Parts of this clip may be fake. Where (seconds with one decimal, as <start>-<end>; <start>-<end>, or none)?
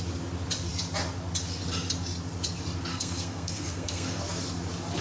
2.9-4.2